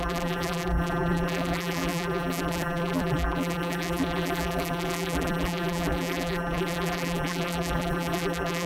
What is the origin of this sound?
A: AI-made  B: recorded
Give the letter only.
A